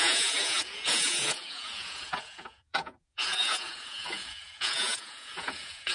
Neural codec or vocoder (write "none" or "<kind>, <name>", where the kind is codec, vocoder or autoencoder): vocoder, Vocos